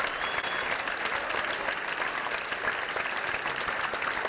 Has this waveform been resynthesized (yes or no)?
no